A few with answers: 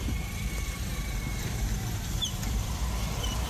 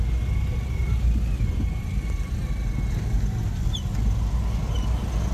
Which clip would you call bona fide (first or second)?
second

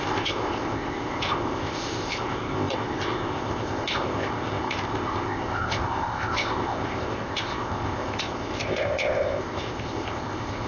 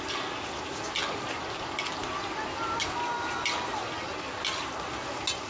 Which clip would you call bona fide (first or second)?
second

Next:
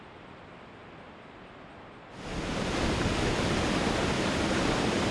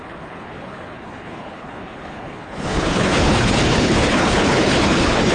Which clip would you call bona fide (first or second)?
first